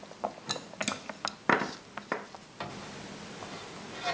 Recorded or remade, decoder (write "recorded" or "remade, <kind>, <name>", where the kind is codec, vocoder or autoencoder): recorded